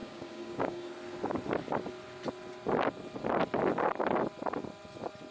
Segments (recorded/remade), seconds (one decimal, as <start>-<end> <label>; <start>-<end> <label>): 0.0-0.9 remade; 0.9-5.3 recorded